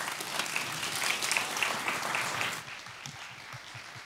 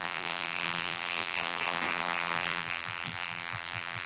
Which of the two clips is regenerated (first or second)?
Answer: second